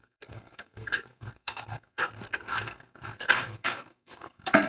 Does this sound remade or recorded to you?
remade